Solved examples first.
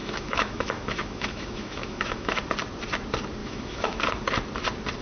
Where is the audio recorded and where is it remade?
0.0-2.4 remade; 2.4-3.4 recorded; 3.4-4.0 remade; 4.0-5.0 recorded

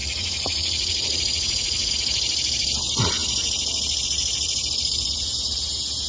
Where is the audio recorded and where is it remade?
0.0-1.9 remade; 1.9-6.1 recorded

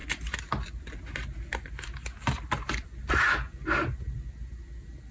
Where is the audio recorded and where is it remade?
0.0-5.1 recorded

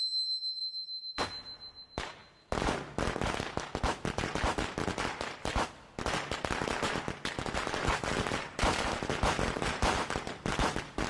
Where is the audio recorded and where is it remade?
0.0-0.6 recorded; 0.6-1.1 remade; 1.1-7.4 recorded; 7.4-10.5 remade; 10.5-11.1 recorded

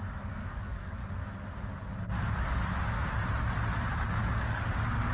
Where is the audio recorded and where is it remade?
0.0-1.0 remade; 1.0-4.1 recorded; 4.1-5.1 remade

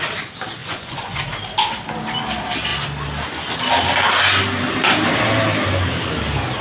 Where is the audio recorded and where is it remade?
0.0-0.6 recorded; 0.6-1.2 remade; 1.2-6.6 recorded